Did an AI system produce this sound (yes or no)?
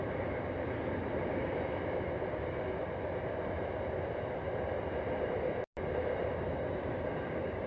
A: no